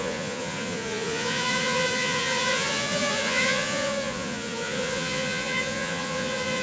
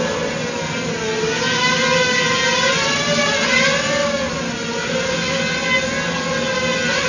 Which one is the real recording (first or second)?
second